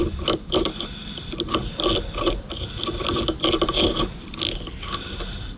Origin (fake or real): real